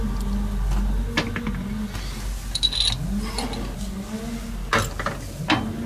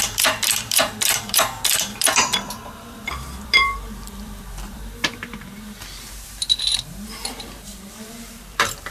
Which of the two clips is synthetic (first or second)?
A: second